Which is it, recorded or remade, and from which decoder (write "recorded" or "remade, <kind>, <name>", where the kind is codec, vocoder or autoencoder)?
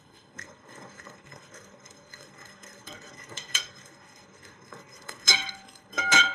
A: remade, codec, SNAC